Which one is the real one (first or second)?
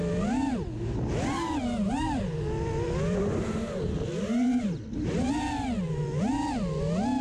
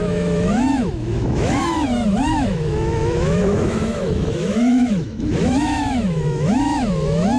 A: first